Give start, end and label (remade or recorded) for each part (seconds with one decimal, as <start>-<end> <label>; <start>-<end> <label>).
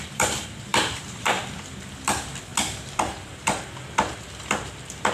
0.0-2.5 remade; 2.5-3.0 recorded; 3.0-5.1 remade